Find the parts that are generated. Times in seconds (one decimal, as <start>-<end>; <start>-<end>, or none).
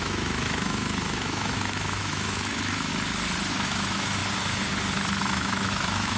0.0-2.9; 3.5-4.2; 5.2-6.2